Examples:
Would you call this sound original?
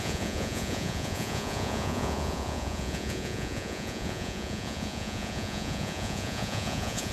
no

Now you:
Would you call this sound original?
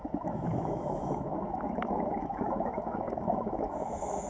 no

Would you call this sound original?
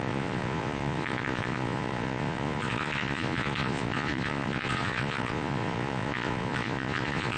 no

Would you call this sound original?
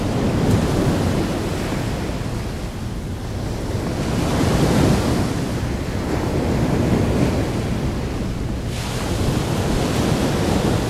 yes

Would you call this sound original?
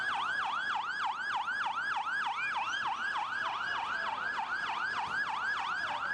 yes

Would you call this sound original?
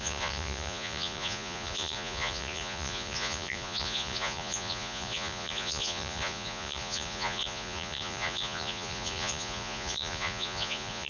no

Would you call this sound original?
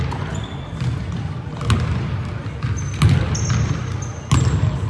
yes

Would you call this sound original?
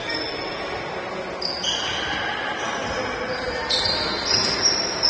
yes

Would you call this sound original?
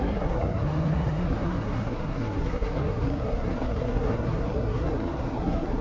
no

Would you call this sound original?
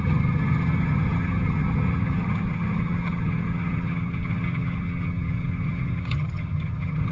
no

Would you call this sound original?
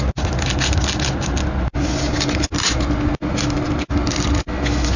yes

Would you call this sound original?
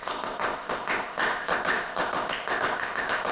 no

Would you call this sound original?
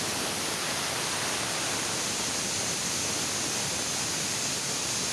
yes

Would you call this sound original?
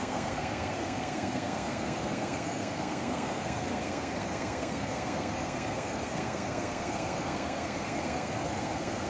no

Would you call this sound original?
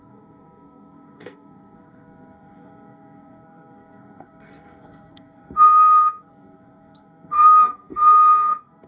no